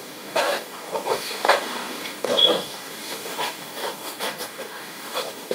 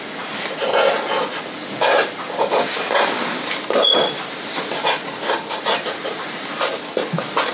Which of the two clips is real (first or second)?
second